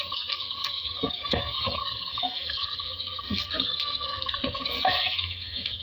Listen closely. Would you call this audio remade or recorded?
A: remade